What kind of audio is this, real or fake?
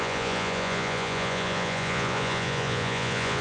fake